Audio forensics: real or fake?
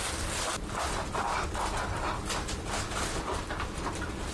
real